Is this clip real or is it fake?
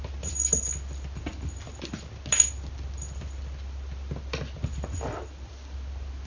real